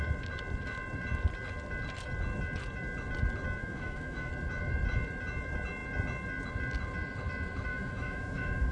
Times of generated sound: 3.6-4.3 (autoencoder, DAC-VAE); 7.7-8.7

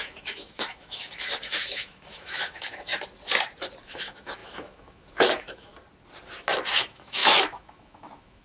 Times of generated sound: 0.0-2.9 (autoencoder, DAC-VAE); 3.8-5.7; 6.7-8.4

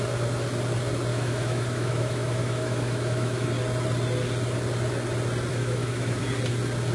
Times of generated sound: 1.1-3.5 (autoencoder, DAC-VAE); 5.5-6.2

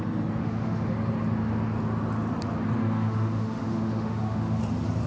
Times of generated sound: 0.4-0.9 (autoencoder, DAC-VAE); 2.8-4.6

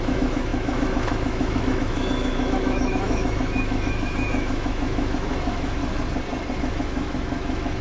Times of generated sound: 0.0-5.8 (autoencoder, DAC-VAE); 6.6-7.8

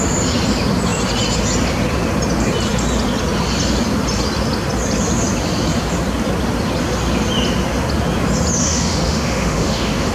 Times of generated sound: 8.6-10.1 (autoencoder, DAC-VAE)

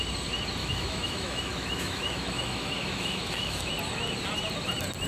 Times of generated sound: 0.6-3.7 (autoencoder, DAC-VAE)